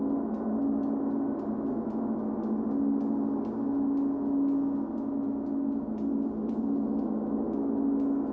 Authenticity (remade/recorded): recorded